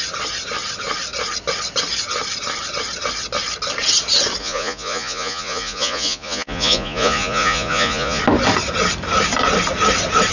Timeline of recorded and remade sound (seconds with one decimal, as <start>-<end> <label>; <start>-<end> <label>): 0.0-4.4 recorded; 4.4-8.2 remade; 8.2-10.3 recorded